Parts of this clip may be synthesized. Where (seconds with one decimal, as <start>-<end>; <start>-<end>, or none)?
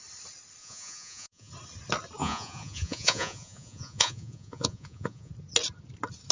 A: 0.6-1.5; 2.2-5.3